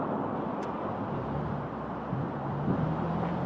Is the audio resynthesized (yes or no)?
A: no